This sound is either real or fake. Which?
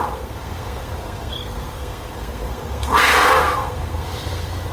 fake